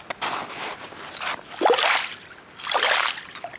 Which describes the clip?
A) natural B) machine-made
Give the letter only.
A